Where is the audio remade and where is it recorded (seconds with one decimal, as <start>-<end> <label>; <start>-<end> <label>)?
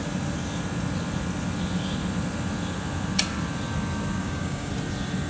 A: 0.0-4.2 recorded; 4.2-4.7 remade; 4.7-5.3 recorded